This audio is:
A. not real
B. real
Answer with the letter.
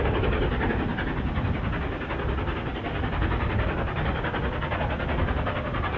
B